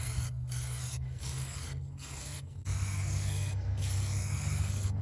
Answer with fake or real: fake